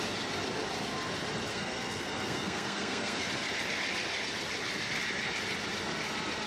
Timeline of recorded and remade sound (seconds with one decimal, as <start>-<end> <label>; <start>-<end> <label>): 0.0-1.5 recorded; 1.5-3.3 remade; 3.3-6.5 recorded